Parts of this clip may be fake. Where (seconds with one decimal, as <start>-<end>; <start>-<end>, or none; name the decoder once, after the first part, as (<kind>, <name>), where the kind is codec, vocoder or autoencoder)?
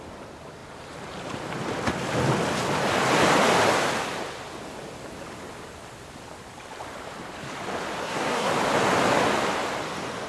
8.0-8.5 (codec, SNAC)